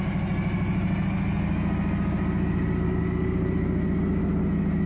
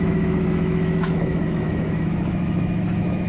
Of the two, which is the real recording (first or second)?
first